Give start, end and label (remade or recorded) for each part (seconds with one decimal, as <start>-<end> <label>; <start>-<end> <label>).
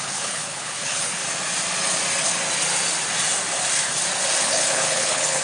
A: 0.0-1.2 remade; 1.2-4.4 recorded; 4.4-5.4 remade